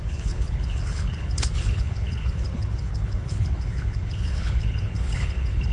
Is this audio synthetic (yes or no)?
yes